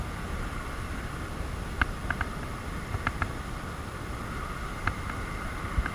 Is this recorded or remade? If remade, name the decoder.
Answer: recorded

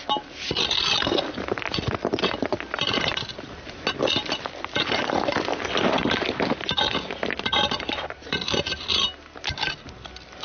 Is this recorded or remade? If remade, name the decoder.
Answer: recorded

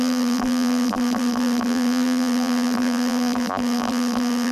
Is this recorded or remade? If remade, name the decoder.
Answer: remade, vocoder, BigVGAN v2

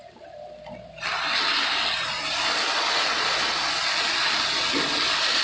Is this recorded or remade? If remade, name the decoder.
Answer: recorded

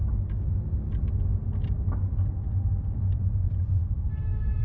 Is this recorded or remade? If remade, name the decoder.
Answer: recorded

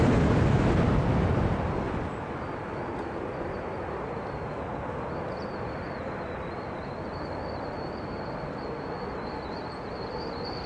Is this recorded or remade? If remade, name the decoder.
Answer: recorded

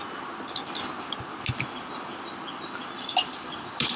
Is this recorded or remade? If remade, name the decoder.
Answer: recorded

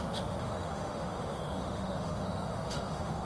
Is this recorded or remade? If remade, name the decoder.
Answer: remade, autoencoder, DAC-VAE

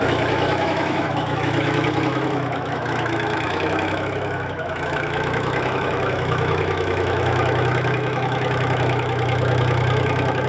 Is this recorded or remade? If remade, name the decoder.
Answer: remade, autoencoder, DAC-VAE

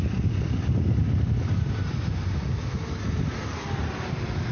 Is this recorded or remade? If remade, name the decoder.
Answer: recorded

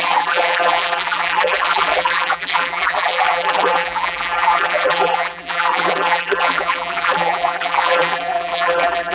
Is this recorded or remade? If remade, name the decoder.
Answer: remade, vocoder, BigVGAN v2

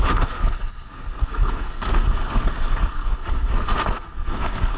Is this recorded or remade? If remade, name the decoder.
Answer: remade, codec, SNAC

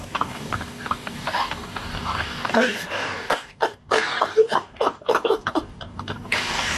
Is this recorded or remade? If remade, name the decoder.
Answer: remade, codec, DAC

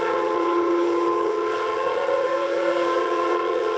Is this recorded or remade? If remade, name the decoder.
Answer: remade, vocoder, HiFi-GAN